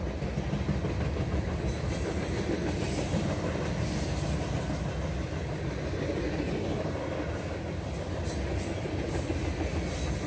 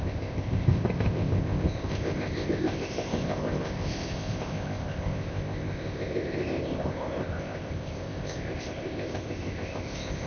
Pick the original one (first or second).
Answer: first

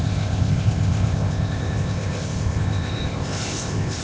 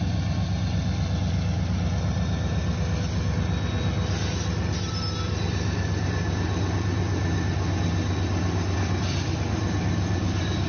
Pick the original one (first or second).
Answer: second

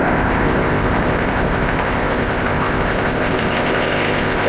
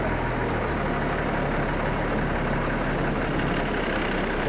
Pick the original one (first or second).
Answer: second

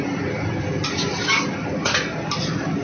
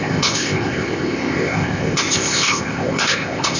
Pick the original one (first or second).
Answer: first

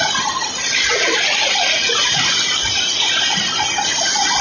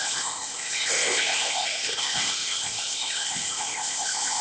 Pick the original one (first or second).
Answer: first